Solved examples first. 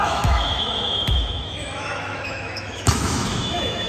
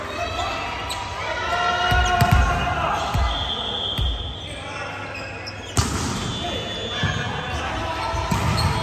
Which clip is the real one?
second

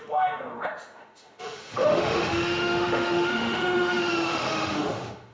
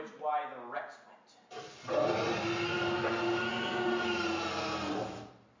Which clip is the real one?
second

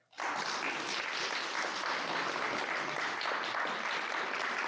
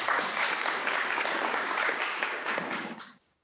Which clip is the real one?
first